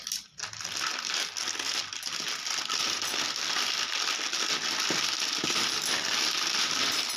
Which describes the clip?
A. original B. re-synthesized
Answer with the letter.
A